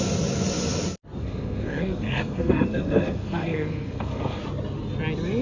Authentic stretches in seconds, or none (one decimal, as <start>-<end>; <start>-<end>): 0.0-1.2; 4.4-5.4